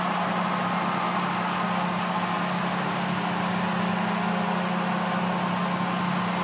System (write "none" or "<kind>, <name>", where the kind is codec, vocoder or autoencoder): none